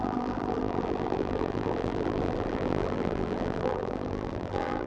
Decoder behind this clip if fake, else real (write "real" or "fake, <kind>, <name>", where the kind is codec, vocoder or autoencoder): fake, vocoder, BigVGAN v2